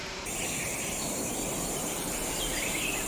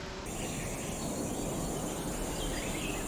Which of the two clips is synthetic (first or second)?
first